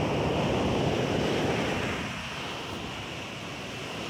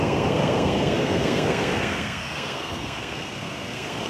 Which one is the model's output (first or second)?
second